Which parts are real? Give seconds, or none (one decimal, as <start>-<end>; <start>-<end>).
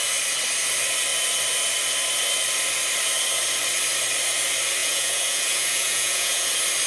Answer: 0.0-4.8; 6.5-6.9